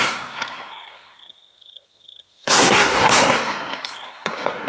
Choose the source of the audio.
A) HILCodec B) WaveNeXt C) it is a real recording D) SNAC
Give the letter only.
D